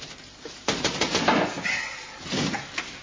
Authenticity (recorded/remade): recorded